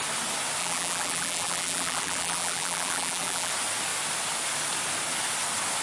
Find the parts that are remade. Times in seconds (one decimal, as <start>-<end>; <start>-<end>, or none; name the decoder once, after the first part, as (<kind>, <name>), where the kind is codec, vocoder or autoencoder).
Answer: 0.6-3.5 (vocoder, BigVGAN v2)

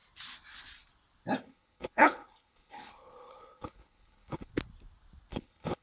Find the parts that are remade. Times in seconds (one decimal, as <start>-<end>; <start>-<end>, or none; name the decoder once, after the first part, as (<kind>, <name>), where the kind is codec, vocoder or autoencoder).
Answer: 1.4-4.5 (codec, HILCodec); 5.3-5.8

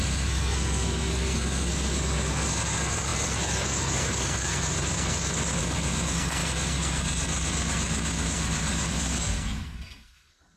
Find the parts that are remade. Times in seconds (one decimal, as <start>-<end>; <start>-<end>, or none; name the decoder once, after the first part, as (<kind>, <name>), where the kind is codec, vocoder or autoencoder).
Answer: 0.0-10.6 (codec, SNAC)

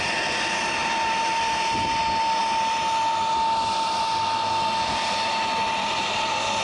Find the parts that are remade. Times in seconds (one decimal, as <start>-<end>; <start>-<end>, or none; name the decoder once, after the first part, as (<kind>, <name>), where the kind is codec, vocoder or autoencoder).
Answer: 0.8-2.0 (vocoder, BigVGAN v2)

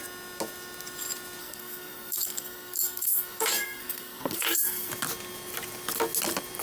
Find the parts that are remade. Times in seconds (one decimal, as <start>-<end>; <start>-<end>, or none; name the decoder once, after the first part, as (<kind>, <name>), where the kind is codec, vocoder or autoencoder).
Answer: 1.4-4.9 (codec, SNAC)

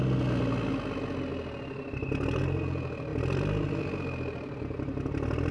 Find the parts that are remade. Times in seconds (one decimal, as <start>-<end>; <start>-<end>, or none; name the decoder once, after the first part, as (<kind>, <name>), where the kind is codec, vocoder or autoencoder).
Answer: 3.1-4.6 (vocoder, BigVGAN v2)